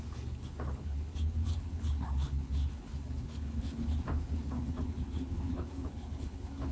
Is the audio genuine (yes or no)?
no